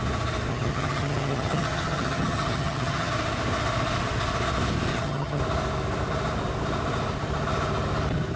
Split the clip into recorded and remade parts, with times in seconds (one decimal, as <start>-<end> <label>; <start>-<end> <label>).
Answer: 0.0-0.5 recorded; 0.5-3.1 remade; 3.1-4.9 recorded; 4.9-5.4 remade; 5.4-8.4 recorded